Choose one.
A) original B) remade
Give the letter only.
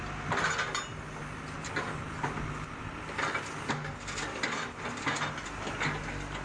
A